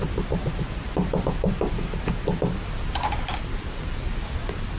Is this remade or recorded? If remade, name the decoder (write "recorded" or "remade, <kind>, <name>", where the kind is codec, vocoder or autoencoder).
recorded